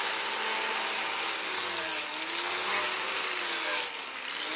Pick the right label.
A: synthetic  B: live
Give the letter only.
B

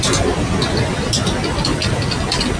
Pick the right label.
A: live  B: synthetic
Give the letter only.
A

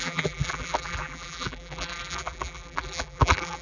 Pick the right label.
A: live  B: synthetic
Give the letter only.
B